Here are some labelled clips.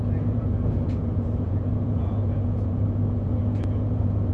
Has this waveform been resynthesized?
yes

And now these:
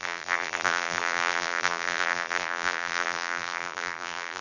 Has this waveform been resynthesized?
yes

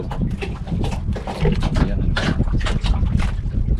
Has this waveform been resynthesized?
no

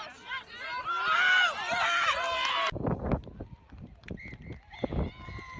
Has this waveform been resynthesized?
no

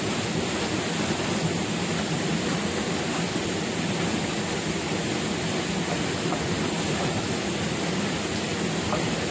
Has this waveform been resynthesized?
no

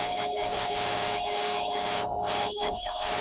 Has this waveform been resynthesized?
yes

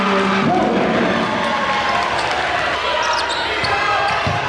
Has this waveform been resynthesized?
no